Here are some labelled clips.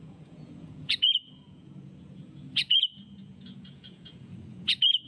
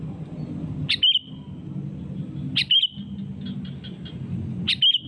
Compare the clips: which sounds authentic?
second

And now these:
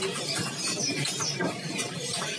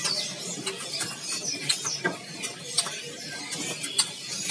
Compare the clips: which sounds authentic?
second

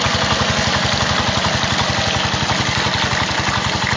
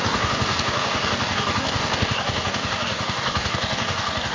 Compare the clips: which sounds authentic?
first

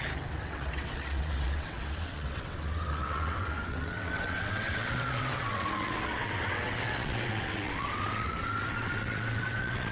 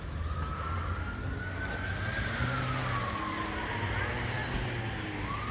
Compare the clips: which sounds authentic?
second